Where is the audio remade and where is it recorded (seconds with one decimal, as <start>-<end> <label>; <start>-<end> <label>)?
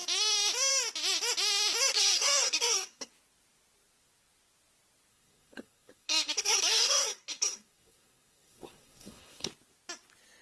0.0-1.9 recorded; 1.9-3.1 remade; 3.1-5.1 recorded; 5.1-9.5 remade; 9.5-10.4 recorded